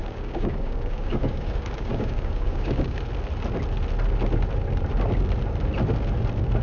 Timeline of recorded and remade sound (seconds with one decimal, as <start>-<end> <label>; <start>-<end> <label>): 0.0-3.0 remade; 3.0-6.6 recorded